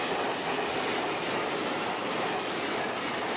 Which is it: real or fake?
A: real